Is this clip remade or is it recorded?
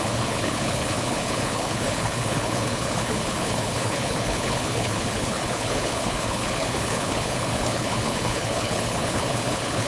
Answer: remade